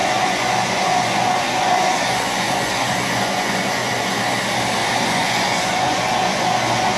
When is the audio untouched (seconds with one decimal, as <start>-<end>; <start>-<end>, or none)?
4.2-4.8